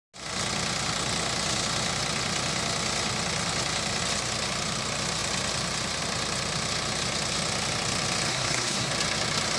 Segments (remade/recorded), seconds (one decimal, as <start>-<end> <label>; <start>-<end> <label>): 0.0-8.3 recorded; 8.3-8.9 remade; 8.9-9.6 recorded